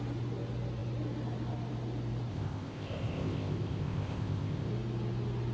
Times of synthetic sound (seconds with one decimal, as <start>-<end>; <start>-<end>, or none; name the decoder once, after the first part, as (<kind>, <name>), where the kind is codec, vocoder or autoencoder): 2.3-4.7 (codec, ZipCodec)